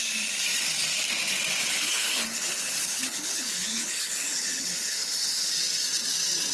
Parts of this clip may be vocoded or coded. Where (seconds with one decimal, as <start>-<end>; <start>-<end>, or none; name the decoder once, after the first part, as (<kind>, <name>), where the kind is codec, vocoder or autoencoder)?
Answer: 1.6-5.5 (codec, HILCodec)